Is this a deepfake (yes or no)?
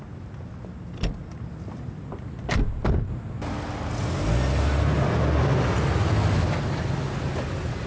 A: no